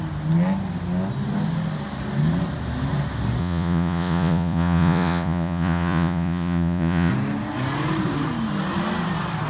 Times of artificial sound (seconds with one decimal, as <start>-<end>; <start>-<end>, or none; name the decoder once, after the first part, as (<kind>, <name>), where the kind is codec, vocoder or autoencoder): 3.4-7.1 (vocoder, Vocos)